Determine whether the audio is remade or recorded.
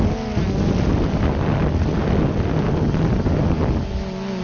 recorded